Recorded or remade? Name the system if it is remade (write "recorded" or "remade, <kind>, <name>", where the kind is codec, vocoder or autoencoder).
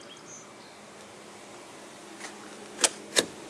recorded